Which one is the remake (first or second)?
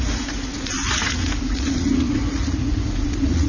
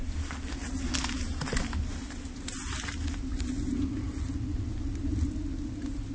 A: first